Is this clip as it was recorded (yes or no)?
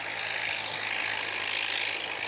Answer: yes